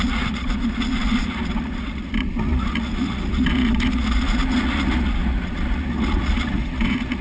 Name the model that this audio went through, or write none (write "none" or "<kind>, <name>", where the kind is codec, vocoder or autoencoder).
vocoder, Vocos